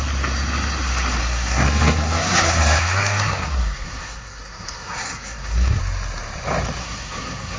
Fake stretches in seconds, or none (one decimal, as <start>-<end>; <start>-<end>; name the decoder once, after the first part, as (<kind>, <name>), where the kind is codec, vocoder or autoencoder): 1.2-5.8 (codec, SNAC); 6.8-7.6